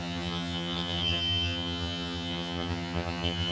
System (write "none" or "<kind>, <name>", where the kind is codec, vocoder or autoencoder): vocoder, HiFi-GAN